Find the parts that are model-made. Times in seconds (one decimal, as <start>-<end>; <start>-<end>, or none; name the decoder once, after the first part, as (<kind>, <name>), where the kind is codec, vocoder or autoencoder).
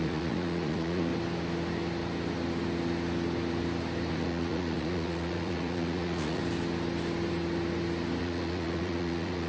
0.0-1.1 (vocoder, Vocos); 4.1-6.4; 8.2-9.5